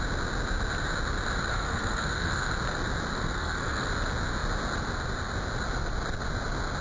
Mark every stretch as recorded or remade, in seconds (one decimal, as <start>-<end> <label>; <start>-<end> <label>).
0.0-1.5 recorded; 1.5-2.5 remade; 2.5-3.1 recorded; 3.1-3.9 remade; 3.9-6.8 recorded